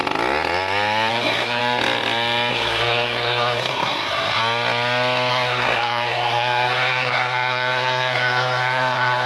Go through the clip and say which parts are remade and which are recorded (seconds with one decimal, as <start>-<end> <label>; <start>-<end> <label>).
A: 0.0-1.1 recorded; 1.1-1.6 remade; 1.6-2.5 recorded; 2.5-4.4 remade; 4.4-5.3 recorded; 5.3-9.3 remade